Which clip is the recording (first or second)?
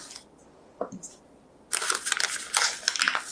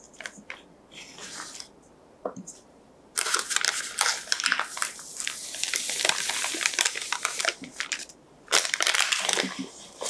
first